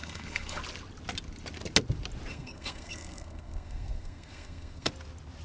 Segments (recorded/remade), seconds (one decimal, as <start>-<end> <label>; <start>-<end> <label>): 0.0-0.6 remade; 0.6-2.3 recorded; 2.3-4.9 remade; 4.9-5.4 recorded